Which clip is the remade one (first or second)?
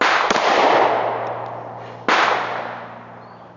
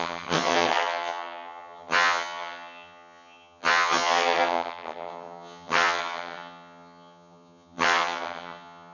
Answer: second